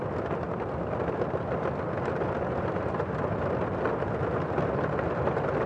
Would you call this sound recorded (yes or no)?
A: yes